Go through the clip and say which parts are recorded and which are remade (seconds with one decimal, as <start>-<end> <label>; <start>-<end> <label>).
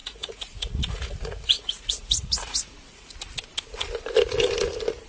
0.0-3.1 remade; 3.1-5.1 recorded